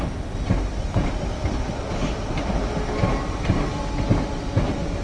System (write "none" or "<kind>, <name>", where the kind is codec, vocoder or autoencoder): none